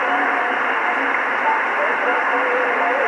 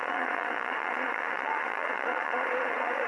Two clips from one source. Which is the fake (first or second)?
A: second